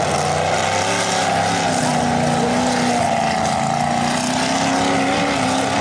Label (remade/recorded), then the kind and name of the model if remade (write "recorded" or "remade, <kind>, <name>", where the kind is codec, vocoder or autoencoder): recorded